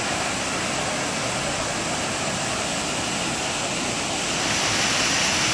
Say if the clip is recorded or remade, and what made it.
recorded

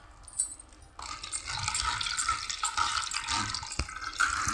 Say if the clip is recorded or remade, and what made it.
recorded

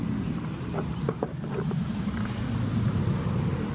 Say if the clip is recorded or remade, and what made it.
recorded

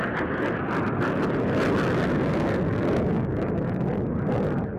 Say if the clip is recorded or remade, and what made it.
recorded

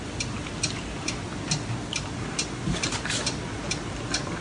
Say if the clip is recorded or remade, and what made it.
recorded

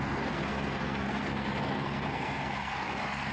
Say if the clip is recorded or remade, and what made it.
remade, codec, SNAC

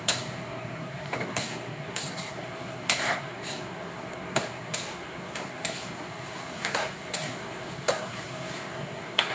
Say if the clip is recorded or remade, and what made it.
remade, codec, SNAC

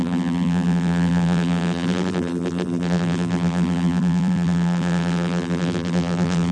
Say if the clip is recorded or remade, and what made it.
remade, vocoder, BigVGAN v2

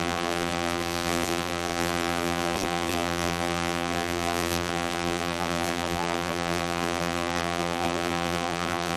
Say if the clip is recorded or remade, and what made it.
remade, vocoder, BigVGAN v2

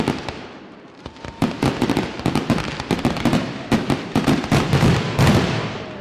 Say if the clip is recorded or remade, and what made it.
remade, vocoder, BigVGAN v2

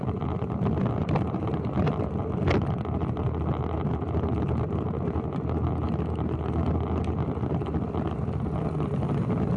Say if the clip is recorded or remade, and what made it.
recorded